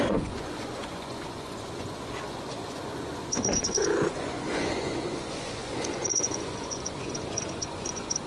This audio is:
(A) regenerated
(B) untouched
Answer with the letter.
A